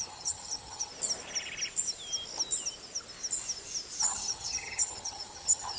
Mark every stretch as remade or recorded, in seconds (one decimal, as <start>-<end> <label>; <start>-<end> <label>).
0.0-0.9 remade; 0.9-4.0 recorded; 4.0-5.8 remade